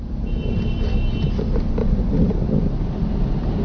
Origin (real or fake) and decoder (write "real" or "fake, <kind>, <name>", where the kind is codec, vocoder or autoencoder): real